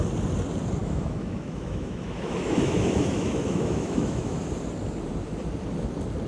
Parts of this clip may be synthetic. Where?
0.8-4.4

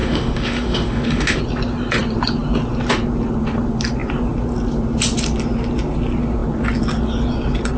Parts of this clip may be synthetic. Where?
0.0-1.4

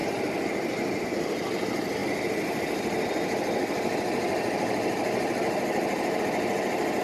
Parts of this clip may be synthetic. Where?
none

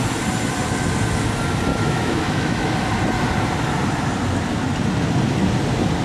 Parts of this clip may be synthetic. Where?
1.7-2.7